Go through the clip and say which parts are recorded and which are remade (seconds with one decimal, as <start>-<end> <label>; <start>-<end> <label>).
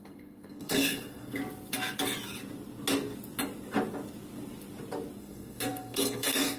0.0-1.4 remade; 1.4-5.2 recorded; 5.2-6.6 remade